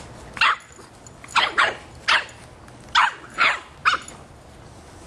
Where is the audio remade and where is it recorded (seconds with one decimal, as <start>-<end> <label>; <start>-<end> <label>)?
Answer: 0.0-5.1 recorded